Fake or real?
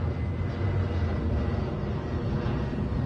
real